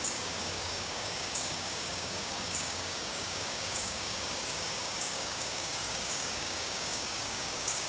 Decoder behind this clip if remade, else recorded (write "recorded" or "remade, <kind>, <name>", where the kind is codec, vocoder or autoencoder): remade, codec, DAC